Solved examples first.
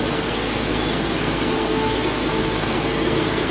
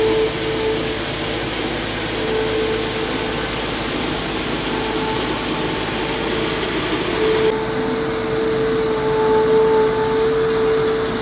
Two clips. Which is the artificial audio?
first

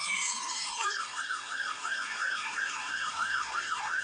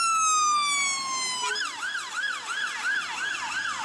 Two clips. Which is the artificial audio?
first